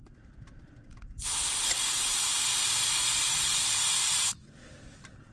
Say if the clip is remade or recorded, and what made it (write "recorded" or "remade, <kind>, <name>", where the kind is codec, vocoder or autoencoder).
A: recorded